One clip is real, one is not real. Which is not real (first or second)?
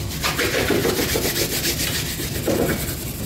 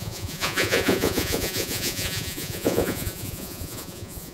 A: second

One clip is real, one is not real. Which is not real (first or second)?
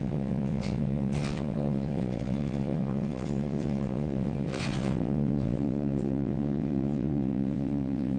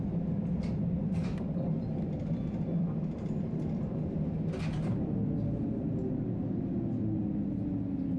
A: first